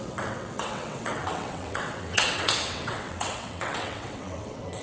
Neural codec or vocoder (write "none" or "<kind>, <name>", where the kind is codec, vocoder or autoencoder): vocoder, WaveNeXt